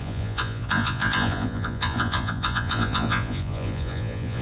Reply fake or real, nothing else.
fake